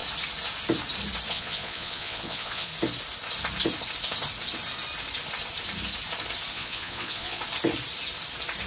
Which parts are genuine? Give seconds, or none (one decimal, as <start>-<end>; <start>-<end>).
0.0-1.3; 2.7-6.5; 7.4-8.7